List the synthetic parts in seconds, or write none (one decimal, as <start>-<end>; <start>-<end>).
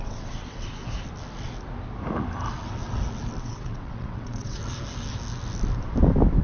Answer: 0.0-0.8; 3.4-4.6